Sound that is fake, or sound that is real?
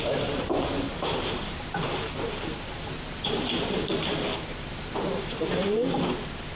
fake